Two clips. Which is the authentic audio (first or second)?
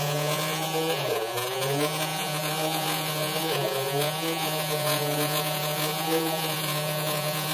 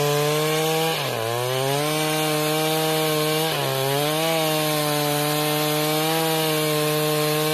second